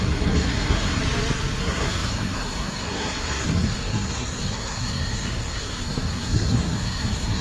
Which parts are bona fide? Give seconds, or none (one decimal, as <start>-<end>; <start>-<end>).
1.0-1.6